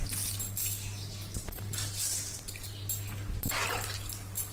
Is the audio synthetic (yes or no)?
no